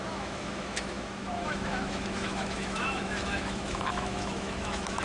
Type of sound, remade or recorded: remade